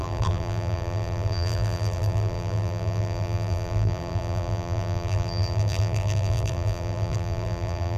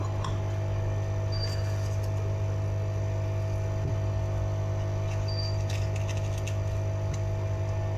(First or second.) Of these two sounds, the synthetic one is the first